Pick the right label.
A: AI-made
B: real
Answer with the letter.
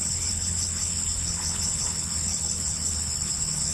A